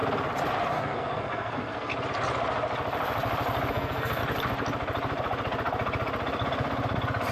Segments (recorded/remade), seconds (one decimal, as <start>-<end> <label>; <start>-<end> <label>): 0.0-0.7 recorded; 0.7-1.9 remade; 1.9-3.7 recorded; 3.7-4.2 remade; 4.2-7.3 recorded